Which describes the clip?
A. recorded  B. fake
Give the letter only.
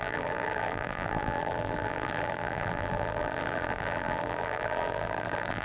B